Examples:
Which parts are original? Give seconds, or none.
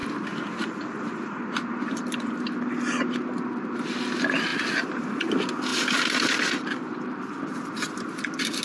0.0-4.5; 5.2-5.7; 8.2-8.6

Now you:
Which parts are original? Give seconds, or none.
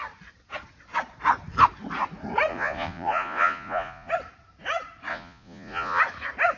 0.0-2.5; 4.1-5.1; 6.0-6.6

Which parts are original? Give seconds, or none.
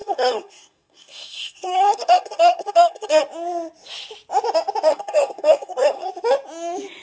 3.2-4.9; 6.1-7.0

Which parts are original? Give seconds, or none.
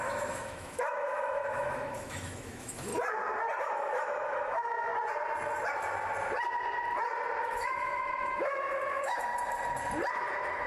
2.9-3.6; 4.9-7.4; 9.3-10.1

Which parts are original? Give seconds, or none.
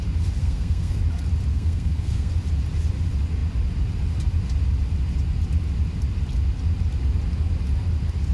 0.0-0.4; 1.0-1.5; 2.3-8.3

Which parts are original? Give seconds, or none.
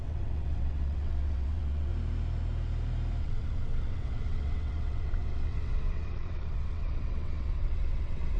1.9-3.2